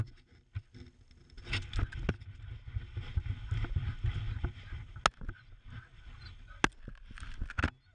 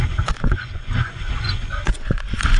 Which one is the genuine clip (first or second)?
first